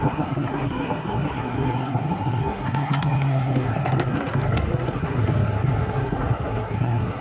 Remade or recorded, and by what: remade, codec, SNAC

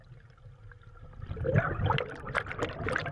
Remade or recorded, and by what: recorded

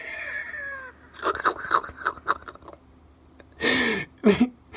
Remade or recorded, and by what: recorded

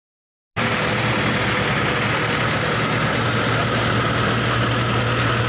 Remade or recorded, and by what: recorded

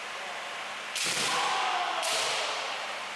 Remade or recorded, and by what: recorded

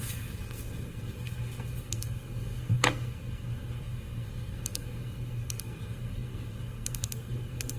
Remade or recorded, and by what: remade, codec, SNAC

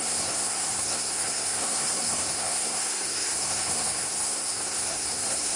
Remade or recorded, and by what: remade, codec, SNAC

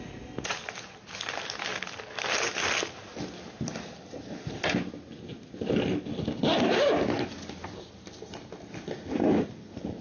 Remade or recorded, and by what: recorded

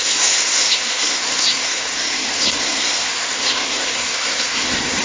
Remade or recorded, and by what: remade, codec, SNAC